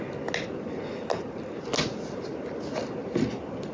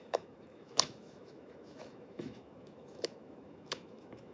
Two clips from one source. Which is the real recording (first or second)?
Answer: first